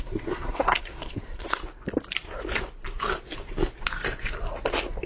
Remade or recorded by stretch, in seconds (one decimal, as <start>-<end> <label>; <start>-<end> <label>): 0.0-1.6 remade; 1.6-5.1 recorded